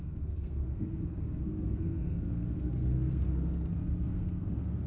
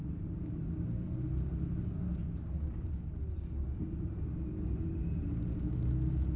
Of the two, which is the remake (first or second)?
first